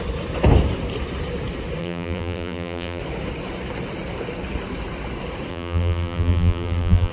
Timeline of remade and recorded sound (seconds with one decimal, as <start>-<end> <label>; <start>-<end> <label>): 0.0-1.8 recorded; 1.8-3.0 remade; 3.0-5.5 recorded; 5.5-7.1 remade